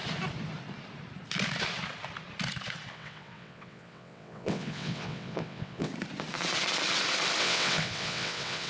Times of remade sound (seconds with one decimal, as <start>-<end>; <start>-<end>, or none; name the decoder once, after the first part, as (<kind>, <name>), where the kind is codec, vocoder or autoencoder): 2.9-5.9 (vocoder, WaveNeXt); 7.4-8.7